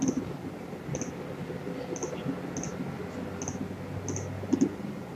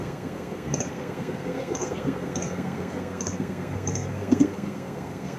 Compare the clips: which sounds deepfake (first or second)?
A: second